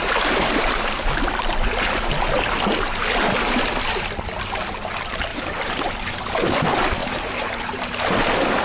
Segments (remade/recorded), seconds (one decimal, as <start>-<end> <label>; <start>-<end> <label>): 0.0-5.3 recorded; 5.3-6.2 remade; 6.2-7.0 recorded; 7.0-7.8 remade; 7.8-8.6 recorded